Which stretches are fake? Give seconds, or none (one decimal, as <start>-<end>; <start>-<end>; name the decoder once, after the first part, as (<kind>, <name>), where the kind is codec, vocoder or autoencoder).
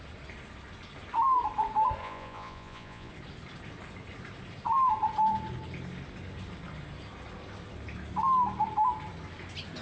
2.0-3.1 (vocoder, Vocos)